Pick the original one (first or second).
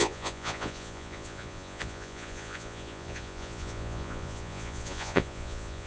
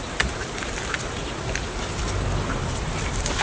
second